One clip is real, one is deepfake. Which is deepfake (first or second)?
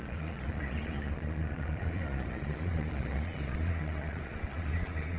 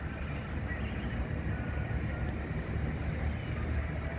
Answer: first